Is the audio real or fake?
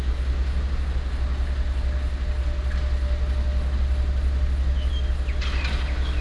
real